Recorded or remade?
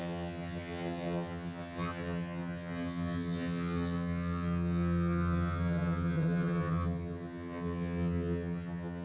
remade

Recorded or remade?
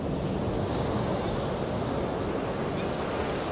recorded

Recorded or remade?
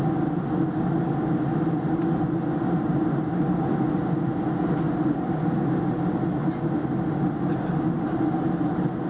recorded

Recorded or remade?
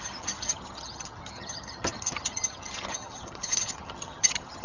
remade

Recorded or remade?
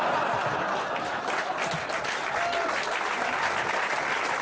recorded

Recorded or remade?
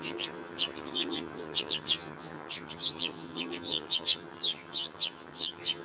remade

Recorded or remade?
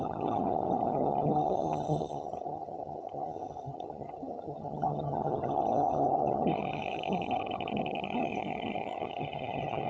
remade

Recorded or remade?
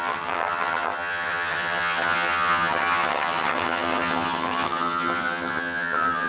remade